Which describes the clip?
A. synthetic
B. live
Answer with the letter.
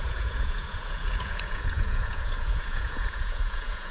A